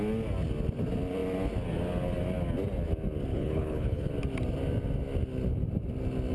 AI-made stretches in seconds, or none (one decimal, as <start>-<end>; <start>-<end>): 3.3-4.1